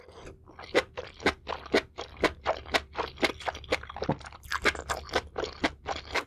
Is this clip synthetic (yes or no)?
no